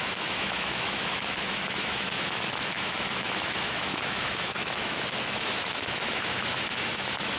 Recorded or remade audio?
remade